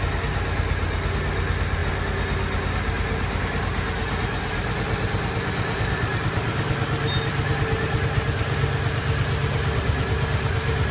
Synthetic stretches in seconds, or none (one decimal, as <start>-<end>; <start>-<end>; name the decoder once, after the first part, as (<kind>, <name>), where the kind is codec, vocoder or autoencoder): none

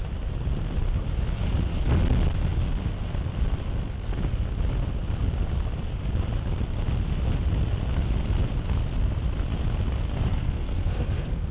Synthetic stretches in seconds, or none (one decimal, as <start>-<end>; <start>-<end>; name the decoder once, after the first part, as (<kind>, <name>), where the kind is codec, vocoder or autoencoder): 10.3-11.5 (codec, SNAC)

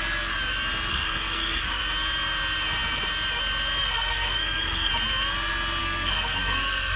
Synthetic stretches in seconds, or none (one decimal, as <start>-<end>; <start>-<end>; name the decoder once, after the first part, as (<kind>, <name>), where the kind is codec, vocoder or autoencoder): 0.9-1.8 (codec, SNAC); 3.8-4.9; 5.8-7.0

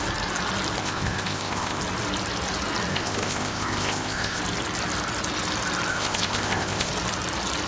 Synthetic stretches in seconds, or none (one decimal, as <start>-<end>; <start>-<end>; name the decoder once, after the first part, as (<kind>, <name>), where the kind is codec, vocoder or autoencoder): 0.8-1.8 (codec, ZipCodec); 2.9-4.4; 5.9-6.9